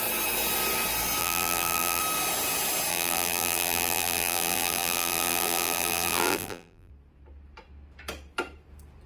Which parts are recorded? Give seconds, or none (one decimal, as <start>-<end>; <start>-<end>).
0.0-1.2; 2.0-2.9; 6.9-9.1